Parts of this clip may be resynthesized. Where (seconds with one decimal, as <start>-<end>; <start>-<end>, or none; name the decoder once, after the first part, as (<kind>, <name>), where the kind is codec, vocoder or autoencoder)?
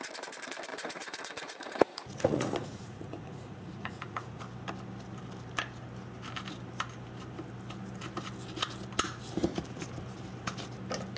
0.7-4.4 (vocoder, Vocos)